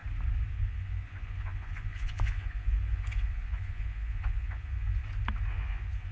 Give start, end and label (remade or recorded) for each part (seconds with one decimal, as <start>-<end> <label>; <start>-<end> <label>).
0.0-0.5 recorded; 0.5-5.0 remade; 5.0-5.5 recorded; 5.5-6.1 remade